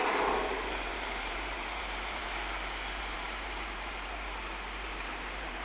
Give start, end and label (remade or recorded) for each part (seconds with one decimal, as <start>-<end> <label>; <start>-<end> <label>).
0.0-2.2 remade; 2.2-3.0 recorded; 3.0-5.6 remade